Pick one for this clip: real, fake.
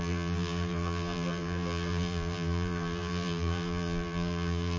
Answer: fake